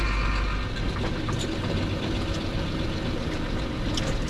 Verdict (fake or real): real